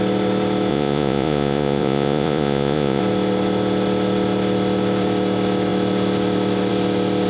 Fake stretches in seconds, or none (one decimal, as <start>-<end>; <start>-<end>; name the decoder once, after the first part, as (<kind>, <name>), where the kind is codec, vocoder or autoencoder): 0.7-3.0 (vocoder, Vocos)